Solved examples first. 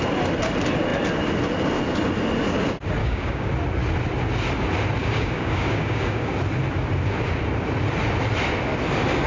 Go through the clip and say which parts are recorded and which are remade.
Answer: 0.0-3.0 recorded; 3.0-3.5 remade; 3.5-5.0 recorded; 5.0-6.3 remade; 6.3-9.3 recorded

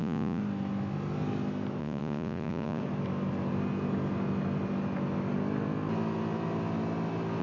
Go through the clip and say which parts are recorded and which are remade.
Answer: 0.0-0.4 remade; 0.4-1.8 recorded; 1.8-2.8 remade; 2.8-7.4 recorded

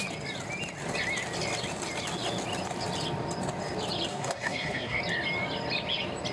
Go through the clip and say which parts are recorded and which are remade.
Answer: 0.0-4.1 recorded; 4.1-5.0 remade; 5.0-6.3 recorded

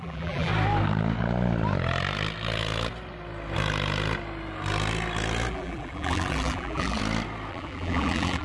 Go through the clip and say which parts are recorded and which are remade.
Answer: 0.0-0.5 remade; 0.5-5.5 recorded; 5.5-7.0 remade; 7.0-7.5 recorded; 7.5-8.4 remade

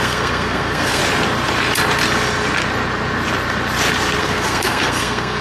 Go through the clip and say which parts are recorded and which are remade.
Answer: 0.0-1.0 remade; 1.0-4.2 recorded; 4.2-5.4 remade